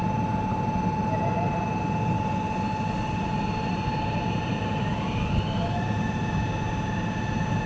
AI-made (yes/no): no